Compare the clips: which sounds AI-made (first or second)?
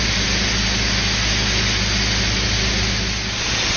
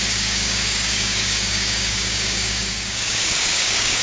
second